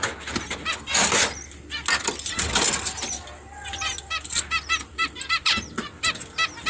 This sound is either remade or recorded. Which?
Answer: recorded